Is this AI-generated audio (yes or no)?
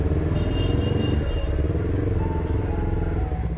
no